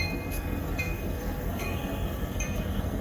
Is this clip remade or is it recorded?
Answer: remade